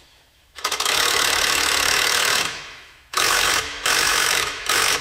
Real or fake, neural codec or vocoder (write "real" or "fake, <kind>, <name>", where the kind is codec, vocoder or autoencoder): fake, autoencoder, DAC-VAE